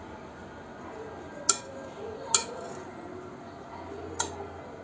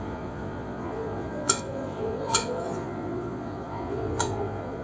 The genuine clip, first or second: first